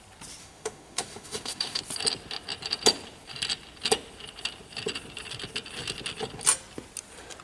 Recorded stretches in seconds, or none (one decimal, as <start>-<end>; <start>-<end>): 0.0-0.4; 1.8-7.4